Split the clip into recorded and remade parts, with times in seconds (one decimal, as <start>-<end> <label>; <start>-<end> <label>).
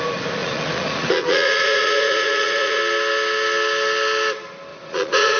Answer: 0.0-0.4 recorded; 0.4-2.8 remade; 2.8-4.7 recorded; 4.7-5.4 remade